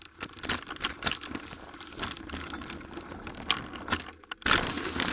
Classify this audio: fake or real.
real